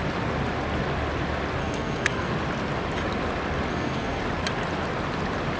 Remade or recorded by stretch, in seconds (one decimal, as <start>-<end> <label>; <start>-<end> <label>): 0.0-1.6 recorded; 1.6-2.3 remade; 2.3-3.7 recorded; 3.7-4.2 remade; 4.2-5.6 recorded